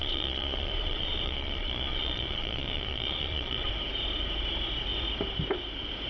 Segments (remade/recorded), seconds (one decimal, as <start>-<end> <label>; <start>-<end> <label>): 0.0-3.7 remade; 3.7-6.1 recorded

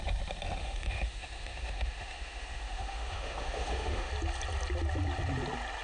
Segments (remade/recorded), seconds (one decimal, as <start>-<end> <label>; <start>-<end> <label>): 0.0-0.6 recorded; 0.6-4.1 remade; 4.1-5.8 recorded